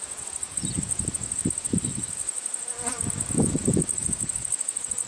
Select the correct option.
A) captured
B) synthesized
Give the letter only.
B